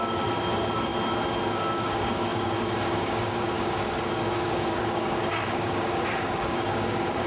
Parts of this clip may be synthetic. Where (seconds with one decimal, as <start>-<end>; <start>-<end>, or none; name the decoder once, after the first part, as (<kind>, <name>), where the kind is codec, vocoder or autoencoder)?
0.0-0.9 (codec, DAC); 1.5-7.3